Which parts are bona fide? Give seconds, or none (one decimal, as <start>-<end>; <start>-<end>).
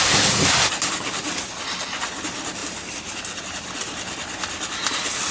0.0-5.3